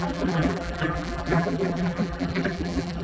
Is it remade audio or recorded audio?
remade